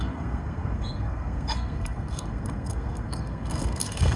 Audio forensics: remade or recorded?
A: remade